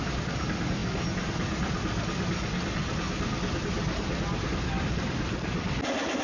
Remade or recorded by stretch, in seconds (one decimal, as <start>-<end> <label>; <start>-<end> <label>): 0.0-0.8 remade; 0.8-4.5 recorded; 4.5-6.2 remade